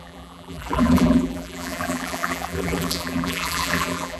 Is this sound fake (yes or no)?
yes